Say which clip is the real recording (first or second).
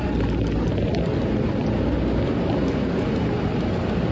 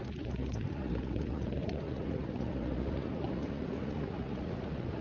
first